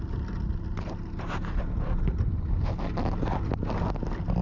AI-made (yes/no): no